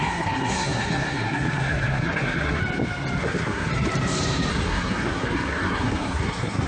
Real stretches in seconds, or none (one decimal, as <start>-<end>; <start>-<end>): 2.6-3.2; 3.7-4.5